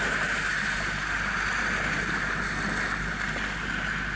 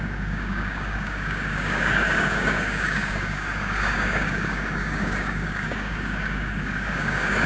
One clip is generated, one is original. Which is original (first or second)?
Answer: first